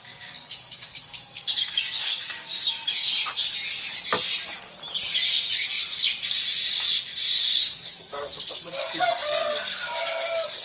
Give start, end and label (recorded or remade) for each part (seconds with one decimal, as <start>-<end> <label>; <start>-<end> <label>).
0.0-3.2 remade; 3.2-7.4 recorded; 7.4-9.4 remade; 9.4-10.0 recorded; 10.0-10.6 remade